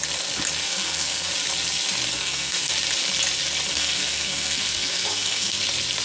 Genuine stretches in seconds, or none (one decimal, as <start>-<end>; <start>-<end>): 0.0-0.6; 1.3-2.1; 2.7-3.7; 5.6-6.0